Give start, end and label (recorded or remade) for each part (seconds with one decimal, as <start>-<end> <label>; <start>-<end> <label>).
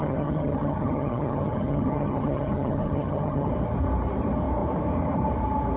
0.0-3.5 remade; 3.5-5.8 recorded